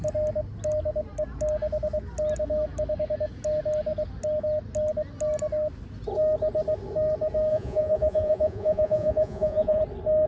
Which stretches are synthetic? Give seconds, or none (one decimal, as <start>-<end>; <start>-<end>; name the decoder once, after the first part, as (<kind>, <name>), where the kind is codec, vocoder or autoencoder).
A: 7.5-9.8 (vocoder, Vocos)